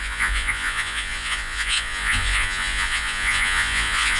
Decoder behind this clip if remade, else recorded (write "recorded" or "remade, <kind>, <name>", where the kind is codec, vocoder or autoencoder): remade, vocoder, Vocos